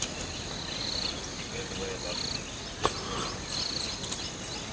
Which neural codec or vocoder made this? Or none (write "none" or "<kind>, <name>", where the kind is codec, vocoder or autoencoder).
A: none